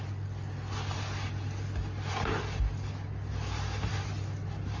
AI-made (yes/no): no